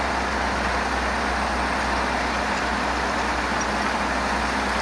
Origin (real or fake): real